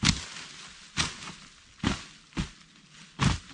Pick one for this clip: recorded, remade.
recorded